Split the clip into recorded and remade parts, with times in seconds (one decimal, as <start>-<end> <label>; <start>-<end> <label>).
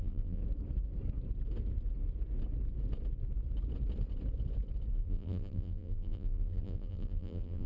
0.0-0.4 remade; 0.4-4.9 recorded; 4.9-7.7 remade